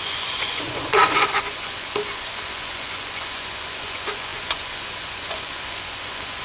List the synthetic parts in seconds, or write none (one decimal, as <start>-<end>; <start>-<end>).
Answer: 0.0-6.4